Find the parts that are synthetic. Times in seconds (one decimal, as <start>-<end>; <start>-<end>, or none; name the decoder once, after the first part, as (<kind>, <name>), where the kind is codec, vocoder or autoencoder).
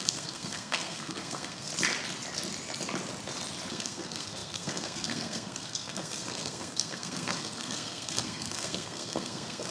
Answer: 0.0-1.7 (codec, SNAC); 3.7-9.7